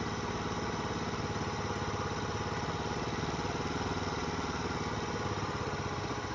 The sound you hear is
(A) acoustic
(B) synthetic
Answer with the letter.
A